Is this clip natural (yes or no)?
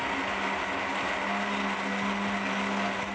yes